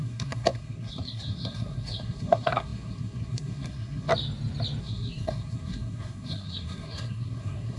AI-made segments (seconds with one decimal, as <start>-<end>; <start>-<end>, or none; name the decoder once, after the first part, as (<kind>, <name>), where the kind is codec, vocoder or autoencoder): 0.0-4.1 (codec, SNAC); 4.8-7.8